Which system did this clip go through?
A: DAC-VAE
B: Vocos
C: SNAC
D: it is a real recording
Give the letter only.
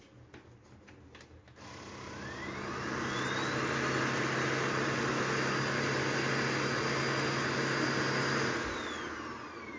D